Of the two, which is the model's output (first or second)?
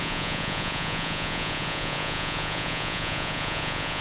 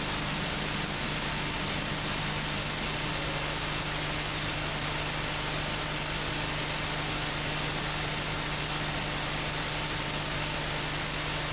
first